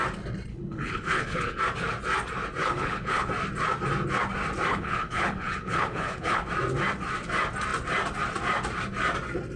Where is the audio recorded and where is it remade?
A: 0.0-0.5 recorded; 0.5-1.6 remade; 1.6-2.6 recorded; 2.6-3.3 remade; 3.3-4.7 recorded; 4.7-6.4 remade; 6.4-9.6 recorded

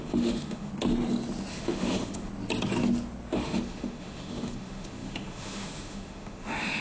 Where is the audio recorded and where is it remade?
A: 0.0-0.7 remade; 0.7-1.5 recorded; 1.5-2.3 remade; 2.3-3.3 recorded; 3.3-6.8 remade